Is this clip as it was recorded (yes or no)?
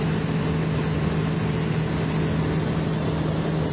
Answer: yes